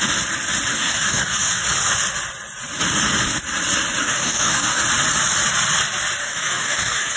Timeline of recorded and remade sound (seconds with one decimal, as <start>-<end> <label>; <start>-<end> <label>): 0.0-0.7 recorded; 0.7-1.6 remade; 1.6-4.0 recorded; 4.0-4.8 remade; 4.8-6.2 recorded; 6.2-7.2 remade